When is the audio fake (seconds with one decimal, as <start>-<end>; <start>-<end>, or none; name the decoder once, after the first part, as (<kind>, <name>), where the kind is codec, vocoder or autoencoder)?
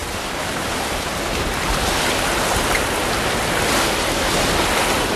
0.0-5.2 (vocoder, BigVGAN v2)